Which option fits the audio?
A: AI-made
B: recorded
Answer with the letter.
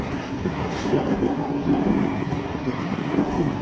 A